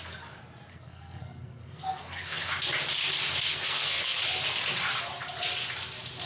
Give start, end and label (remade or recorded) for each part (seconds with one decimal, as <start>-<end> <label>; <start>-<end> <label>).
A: 0.0-0.7 recorded; 0.7-2.5 remade; 2.5-3.5 recorded; 3.5-4.2 remade; 4.2-6.3 recorded